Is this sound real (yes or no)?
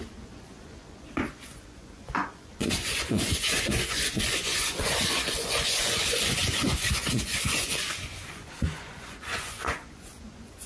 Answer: no